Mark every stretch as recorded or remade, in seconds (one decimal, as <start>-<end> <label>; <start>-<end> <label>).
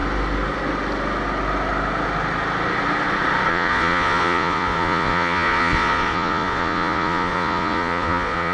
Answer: 0.0-3.5 recorded; 3.5-8.5 remade